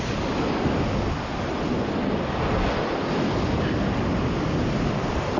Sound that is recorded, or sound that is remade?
recorded